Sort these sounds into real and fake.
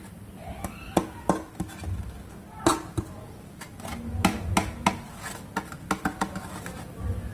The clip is real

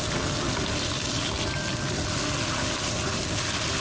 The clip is real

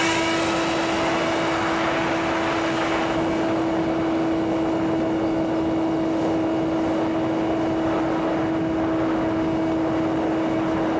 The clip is real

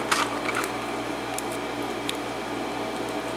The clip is real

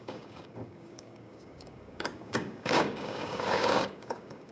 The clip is fake